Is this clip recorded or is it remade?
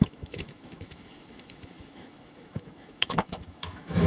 remade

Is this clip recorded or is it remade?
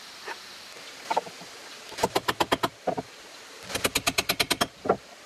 recorded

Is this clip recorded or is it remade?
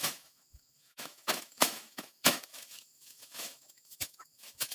remade